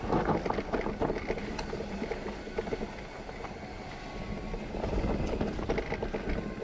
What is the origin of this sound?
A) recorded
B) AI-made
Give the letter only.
A